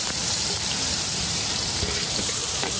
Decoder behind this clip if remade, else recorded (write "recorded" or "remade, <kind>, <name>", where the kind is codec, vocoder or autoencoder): remade, vocoder, BigVGAN v2